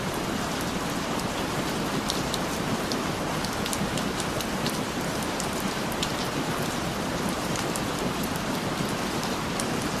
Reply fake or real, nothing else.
real